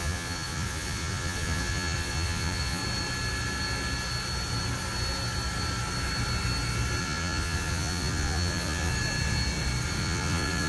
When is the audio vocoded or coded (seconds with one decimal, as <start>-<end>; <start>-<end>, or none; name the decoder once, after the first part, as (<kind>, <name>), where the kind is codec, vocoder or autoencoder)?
0.0-2.8 (vocoder, Vocos); 7.0-8.9; 10.0-10.7